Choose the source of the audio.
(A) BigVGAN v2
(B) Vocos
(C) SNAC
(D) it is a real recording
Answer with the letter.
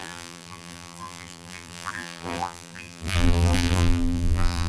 A